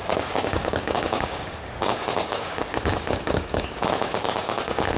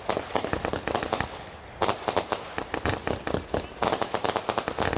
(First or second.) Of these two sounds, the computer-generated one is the first